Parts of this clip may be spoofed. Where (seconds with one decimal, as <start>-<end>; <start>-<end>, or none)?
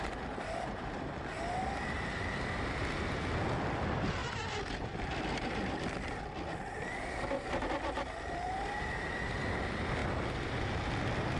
none